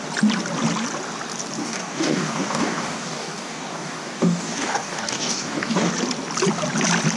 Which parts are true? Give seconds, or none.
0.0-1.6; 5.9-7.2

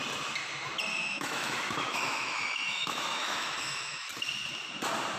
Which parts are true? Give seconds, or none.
0.0-1.0; 4.1-5.2

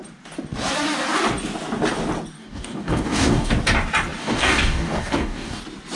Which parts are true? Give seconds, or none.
0.0-2.4; 3.5-4.2; 5.6-6.0

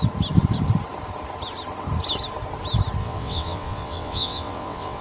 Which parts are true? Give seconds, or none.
0.0-3.0

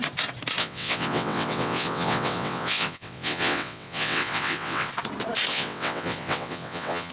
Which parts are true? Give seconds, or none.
0.0-0.6; 4.9-5.5